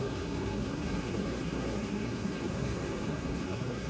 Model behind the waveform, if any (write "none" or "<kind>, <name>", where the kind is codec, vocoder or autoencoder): codec, SNAC